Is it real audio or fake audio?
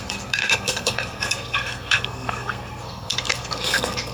fake